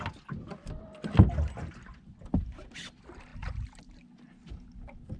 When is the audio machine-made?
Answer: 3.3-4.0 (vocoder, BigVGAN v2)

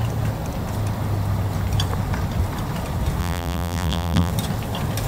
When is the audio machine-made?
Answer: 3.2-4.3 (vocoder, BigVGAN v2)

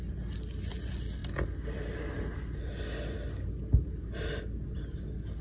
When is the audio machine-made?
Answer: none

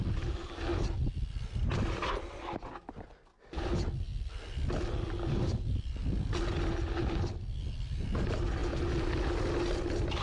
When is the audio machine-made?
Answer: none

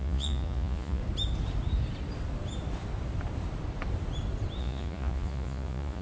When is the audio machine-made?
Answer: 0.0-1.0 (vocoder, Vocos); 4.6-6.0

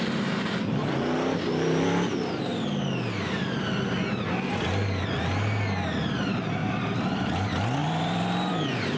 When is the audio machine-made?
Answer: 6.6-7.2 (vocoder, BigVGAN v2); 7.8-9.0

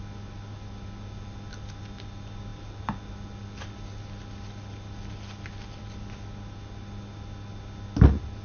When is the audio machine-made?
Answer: none

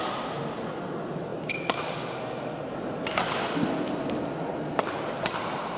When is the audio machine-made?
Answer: none